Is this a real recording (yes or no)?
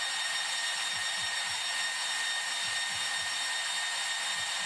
yes